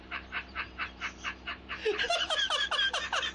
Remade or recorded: remade